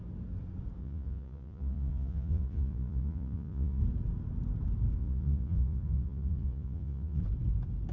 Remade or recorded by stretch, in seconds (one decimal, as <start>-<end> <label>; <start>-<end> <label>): 0.0-0.8 recorded; 0.8-3.8 remade; 3.8-5.0 recorded; 5.0-7.2 remade; 7.2-7.9 recorded